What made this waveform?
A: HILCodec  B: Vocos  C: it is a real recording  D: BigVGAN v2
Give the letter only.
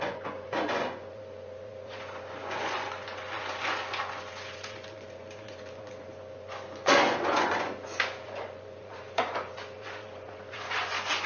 B